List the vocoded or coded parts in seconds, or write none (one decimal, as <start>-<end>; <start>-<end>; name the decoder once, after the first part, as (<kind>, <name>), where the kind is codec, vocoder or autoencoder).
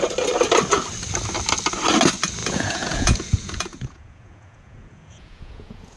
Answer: 2.4-6.0 (vocoder, Vocos)